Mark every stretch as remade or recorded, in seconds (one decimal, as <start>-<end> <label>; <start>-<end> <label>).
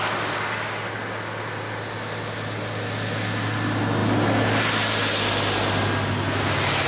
0.0-6.9 recorded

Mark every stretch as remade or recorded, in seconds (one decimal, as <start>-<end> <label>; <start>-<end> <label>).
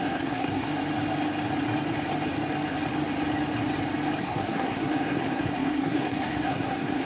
0.0-0.7 remade; 0.7-4.2 recorded; 4.2-7.1 remade